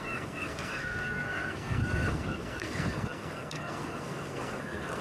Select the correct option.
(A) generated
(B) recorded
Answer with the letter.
A